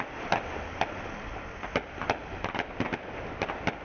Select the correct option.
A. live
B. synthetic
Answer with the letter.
A